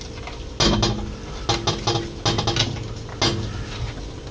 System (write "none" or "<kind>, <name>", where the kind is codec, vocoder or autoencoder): none